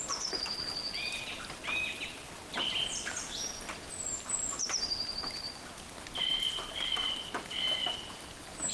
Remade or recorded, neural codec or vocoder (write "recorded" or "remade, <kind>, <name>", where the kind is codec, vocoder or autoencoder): recorded